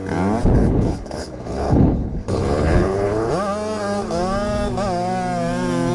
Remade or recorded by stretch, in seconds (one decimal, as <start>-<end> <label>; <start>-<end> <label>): 0.0-0.6 recorded; 0.6-3.3 remade; 3.3-5.9 recorded